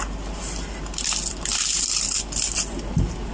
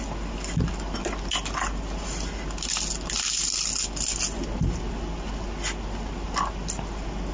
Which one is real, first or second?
second